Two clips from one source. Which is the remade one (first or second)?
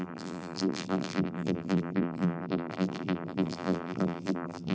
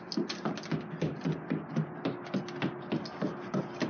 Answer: first